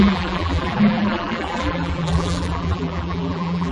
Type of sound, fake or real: fake